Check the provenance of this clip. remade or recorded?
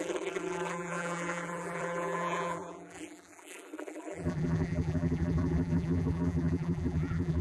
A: remade